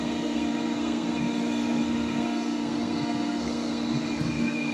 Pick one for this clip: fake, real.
fake